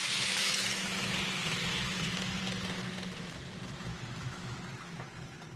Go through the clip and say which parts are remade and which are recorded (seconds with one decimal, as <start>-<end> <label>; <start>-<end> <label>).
0.0-1.1 remade; 1.1-1.7 recorded; 1.7-2.4 remade; 2.4-3.9 recorded; 3.9-4.6 remade; 4.6-5.6 recorded